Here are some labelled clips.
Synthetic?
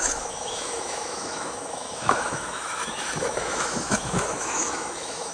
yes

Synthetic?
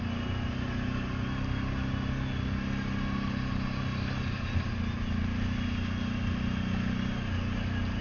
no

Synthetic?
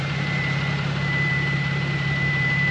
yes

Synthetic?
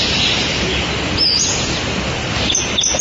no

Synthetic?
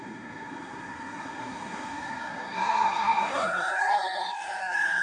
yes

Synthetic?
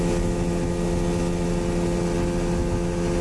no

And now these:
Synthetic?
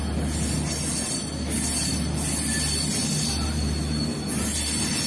no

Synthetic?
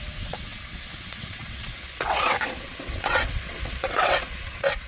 yes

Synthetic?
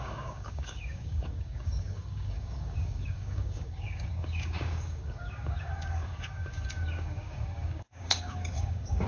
yes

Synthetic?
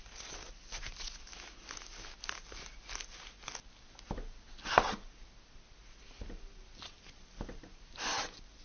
no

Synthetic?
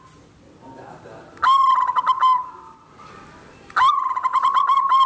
no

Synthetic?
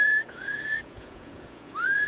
yes